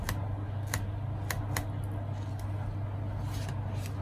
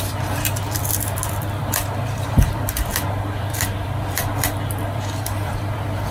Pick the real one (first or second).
first